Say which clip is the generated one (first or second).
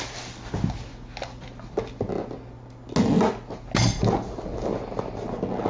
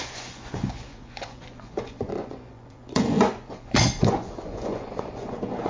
second